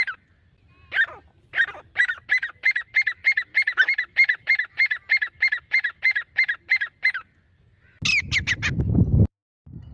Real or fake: real